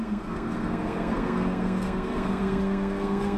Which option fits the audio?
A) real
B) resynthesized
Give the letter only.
B